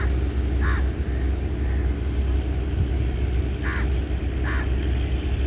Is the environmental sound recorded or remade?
recorded